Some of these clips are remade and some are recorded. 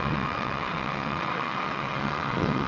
remade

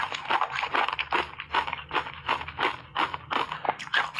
recorded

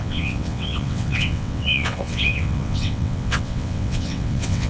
remade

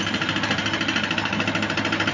recorded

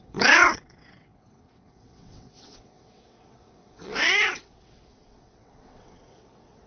remade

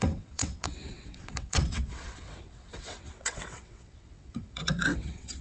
remade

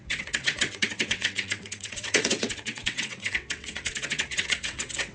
remade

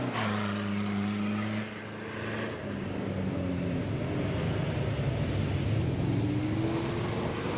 recorded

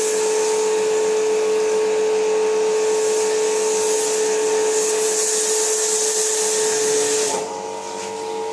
recorded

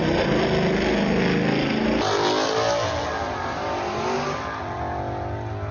recorded